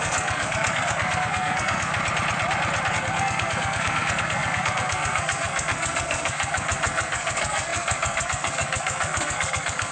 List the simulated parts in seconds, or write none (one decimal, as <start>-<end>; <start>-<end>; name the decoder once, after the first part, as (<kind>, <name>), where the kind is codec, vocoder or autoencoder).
0.0-1.9 (codec, SNAC); 2.9-9.9